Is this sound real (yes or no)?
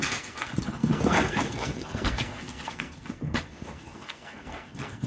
no